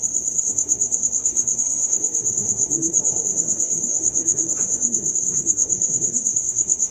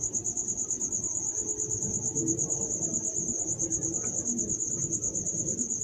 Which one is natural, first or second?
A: second